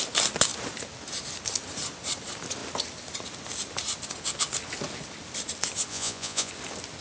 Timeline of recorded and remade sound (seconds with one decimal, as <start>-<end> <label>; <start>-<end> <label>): 0.0-5.9 recorded; 5.9-6.5 remade; 6.5-7.0 recorded